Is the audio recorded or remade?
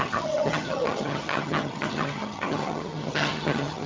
remade